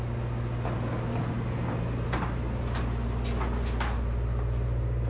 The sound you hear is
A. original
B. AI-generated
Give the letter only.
A